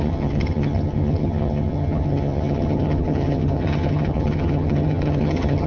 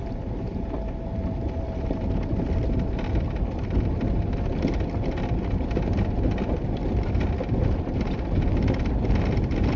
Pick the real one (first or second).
second